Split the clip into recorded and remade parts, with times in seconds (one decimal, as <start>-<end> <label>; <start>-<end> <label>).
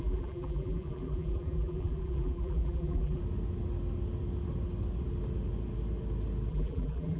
0.0-3.2 remade; 3.2-6.5 recorded; 6.5-7.2 remade